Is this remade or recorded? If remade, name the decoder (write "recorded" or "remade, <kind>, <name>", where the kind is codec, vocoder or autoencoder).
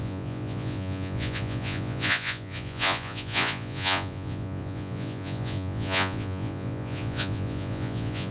remade, vocoder, Vocos